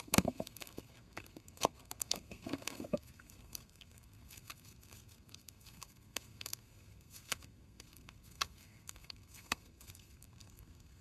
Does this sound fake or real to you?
fake